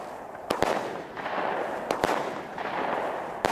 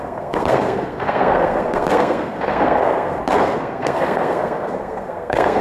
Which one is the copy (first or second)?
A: second